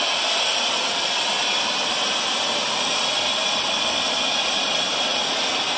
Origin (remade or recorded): recorded